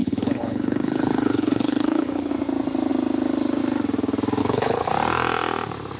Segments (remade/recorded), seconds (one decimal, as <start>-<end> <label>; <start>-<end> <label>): 0.0-2.3 remade; 2.3-4.4 recorded; 4.4-4.9 remade; 4.9-6.0 recorded